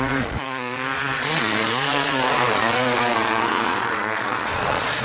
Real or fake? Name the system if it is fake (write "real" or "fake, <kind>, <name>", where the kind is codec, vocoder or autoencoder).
fake, vocoder, Vocos